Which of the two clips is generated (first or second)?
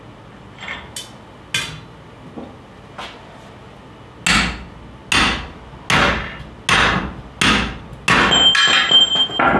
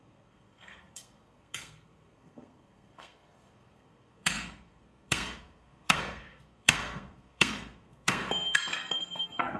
second